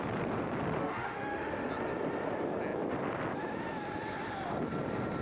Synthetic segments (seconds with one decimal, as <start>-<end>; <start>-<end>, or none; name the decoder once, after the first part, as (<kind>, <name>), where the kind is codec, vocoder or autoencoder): 0.8-1.7 (autoencoder, DAC-VAE)